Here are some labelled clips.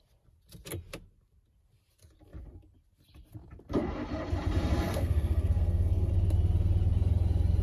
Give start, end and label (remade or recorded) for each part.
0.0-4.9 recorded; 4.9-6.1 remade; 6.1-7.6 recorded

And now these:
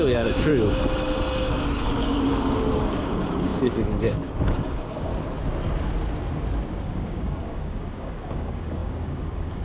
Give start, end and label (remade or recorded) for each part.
0.0-0.5 remade; 0.5-1.8 recorded; 1.8-5.1 remade; 5.1-6.8 recorded; 6.8-9.6 remade

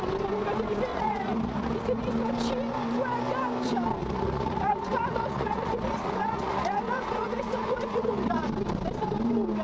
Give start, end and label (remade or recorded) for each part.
0.0-0.9 recorded; 0.9-2.2 remade; 2.2-4.0 recorded; 4.0-8.5 remade; 8.5-9.6 recorded

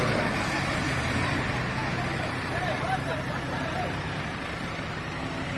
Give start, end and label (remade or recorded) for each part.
0.0-5.6 remade